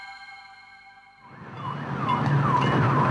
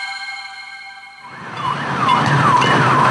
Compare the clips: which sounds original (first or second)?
first